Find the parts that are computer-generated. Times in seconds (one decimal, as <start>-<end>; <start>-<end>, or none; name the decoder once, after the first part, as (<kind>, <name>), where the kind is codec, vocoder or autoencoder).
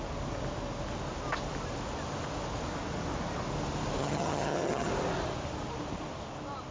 4.0-4.9 (vocoder, HiFi-GAN)